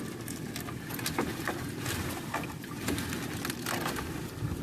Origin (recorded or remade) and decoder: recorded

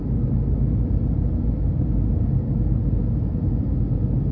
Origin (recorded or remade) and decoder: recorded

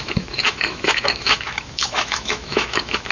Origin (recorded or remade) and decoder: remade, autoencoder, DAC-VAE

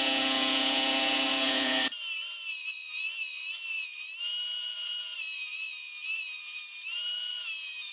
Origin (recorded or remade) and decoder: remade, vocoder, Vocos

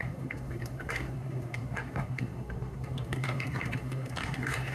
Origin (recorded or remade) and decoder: remade, codec, SNAC